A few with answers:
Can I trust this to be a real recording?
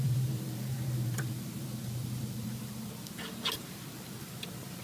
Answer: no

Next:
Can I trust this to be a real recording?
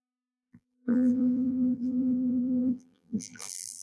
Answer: no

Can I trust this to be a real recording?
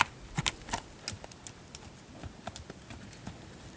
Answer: yes